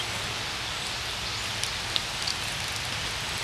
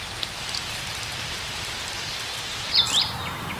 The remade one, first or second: second